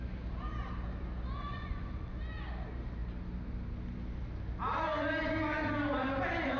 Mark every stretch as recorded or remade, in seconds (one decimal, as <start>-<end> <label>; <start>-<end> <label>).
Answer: 0.0-1.5 recorded; 1.5-2.2 remade; 2.2-6.6 recorded

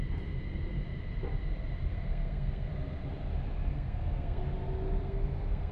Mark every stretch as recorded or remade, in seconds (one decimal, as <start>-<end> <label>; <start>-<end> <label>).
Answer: 0.0-1.9 recorded; 1.9-2.7 remade; 2.7-3.7 recorded; 3.7-4.4 remade; 4.4-5.0 recorded; 5.0-5.7 remade

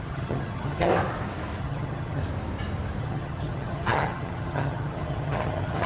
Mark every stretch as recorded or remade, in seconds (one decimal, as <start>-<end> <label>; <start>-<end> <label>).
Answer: 0.0-0.9 remade; 0.9-1.6 recorded; 1.6-2.2 remade; 2.2-3.0 recorded; 3.0-5.9 remade

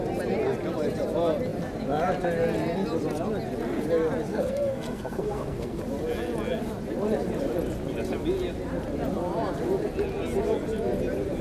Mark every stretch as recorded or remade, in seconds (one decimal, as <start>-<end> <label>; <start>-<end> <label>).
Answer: 0.0-4.3 recorded; 4.3-5.8 remade; 5.8-11.4 recorded

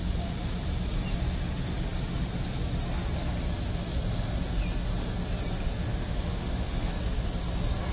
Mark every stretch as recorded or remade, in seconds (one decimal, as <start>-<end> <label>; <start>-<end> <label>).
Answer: 0.0-5.9 recorded; 5.9-6.9 remade; 6.9-7.9 recorded